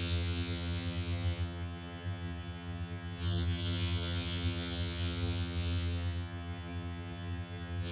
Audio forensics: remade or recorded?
remade